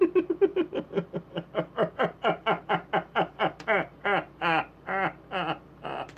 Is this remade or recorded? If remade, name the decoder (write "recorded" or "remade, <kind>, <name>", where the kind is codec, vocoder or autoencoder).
recorded